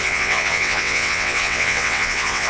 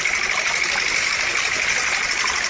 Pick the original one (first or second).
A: second